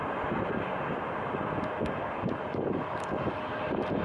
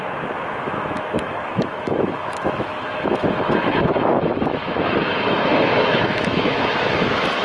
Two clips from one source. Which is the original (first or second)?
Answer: first